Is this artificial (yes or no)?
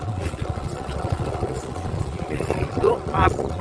yes